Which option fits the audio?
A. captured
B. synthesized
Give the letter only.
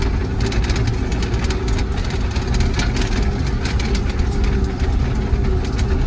A